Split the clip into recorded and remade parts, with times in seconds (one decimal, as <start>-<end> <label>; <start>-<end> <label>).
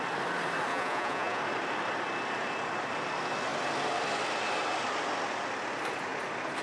0.0-0.7 recorded; 0.7-1.4 remade; 1.4-6.6 recorded